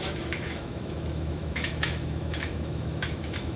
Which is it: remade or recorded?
remade